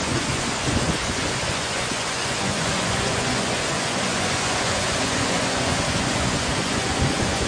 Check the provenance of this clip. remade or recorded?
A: remade